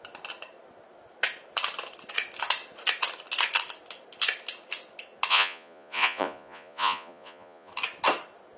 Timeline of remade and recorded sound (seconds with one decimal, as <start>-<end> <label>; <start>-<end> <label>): 0.0-5.3 recorded; 5.3-7.7 remade; 7.7-8.6 recorded